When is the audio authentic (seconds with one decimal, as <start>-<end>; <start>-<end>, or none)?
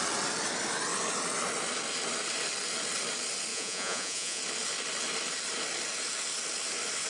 0.0-3.5; 4.4-7.1